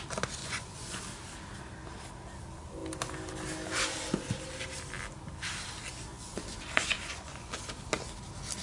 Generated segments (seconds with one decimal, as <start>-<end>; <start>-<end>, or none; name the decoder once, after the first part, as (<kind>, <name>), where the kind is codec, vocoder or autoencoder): 0.4-1.0 (vocoder, Vocos); 6.1-7.5

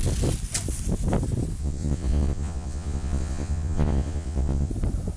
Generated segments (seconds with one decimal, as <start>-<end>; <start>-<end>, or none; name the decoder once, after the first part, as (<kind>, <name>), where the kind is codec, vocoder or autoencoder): 1.6-4.7 (vocoder, Vocos)